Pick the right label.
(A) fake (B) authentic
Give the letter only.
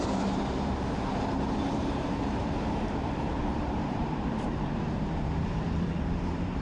A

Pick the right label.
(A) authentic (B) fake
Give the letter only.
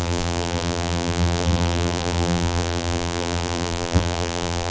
B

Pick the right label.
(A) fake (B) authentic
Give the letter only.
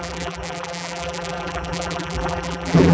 A